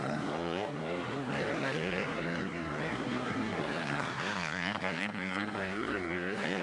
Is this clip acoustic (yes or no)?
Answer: no